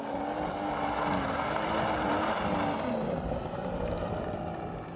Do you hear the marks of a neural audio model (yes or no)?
no